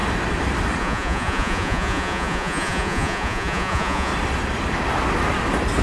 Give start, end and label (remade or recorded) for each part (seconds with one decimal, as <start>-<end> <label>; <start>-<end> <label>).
0.0-0.8 recorded; 0.8-4.1 remade; 4.1-5.8 recorded

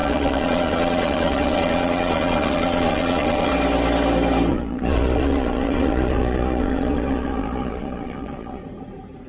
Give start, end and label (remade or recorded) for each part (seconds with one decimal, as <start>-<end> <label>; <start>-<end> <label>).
0.0-3.5 remade; 3.5-4.5 recorded; 4.5-8.6 remade; 8.6-9.3 recorded

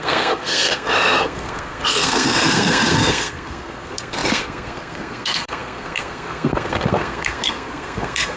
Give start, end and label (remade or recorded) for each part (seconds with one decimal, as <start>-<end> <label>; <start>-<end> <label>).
0.0-8.4 remade

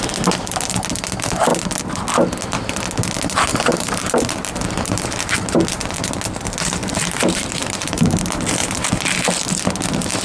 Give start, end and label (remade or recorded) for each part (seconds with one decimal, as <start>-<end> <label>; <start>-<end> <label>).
0.0-3.5 recorded; 3.5-5.2 remade; 5.2-6.8 recorded; 6.8-8.2 remade; 8.2-8.6 recorded; 8.6-9.3 remade; 9.3-10.2 recorded